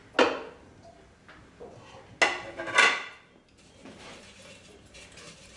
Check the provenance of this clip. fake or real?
real